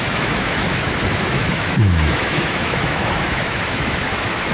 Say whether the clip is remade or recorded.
remade